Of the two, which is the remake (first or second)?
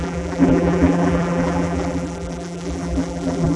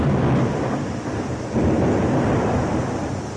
first